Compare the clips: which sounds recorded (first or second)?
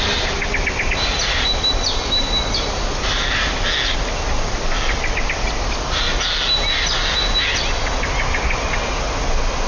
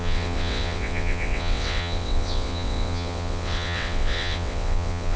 first